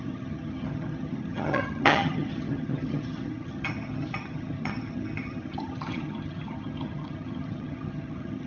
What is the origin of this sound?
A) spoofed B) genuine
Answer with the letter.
A